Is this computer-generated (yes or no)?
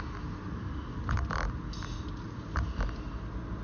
no